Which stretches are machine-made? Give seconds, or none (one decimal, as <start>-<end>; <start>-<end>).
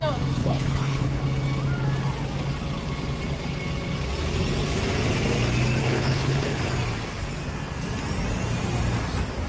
0.4-1.2; 5.8-6.6